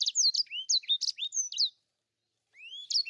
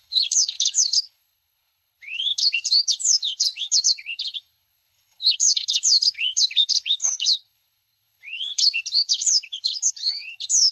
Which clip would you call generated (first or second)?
second